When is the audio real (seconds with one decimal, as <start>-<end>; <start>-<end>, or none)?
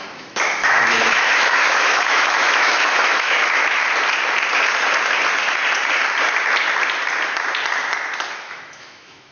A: 3.8-8.4